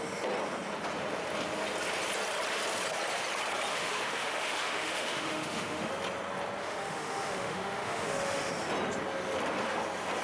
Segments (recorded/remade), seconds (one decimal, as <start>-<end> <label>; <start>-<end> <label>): 0.0-3.7 recorded; 3.7-5.9 remade; 5.9-6.6 recorded; 6.6-8.5 remade; 8.5-10.2 recorded